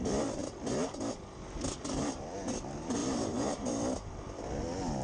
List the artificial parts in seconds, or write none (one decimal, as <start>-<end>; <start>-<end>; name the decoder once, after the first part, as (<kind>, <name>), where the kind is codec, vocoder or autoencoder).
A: 3.0-3.8 (vocoder, BigVGAN v2)